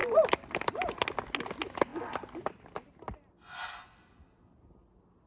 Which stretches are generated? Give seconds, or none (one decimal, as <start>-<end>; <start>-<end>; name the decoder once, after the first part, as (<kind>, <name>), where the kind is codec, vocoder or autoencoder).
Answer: 0.0-1.0 (vocoder, BigVGAN v2); 1.9-2.5